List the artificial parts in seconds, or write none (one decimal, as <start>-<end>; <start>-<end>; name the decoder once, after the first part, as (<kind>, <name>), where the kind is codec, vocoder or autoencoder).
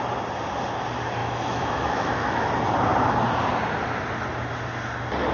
1.2-2.5 (autoencoder, DAC-VAE)